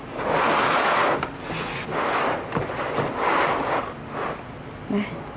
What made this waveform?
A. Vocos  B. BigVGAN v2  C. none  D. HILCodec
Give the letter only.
C